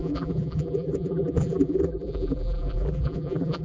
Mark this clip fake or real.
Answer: fake